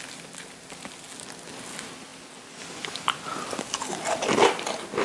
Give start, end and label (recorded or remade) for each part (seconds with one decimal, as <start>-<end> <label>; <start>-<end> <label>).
0.0-5.0 recorded